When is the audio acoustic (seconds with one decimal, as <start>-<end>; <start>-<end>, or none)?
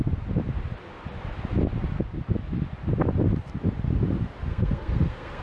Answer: 0.0-4.5